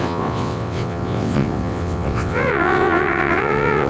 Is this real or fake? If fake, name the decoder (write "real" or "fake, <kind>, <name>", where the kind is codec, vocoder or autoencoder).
fake, vocoder, WaveNeXt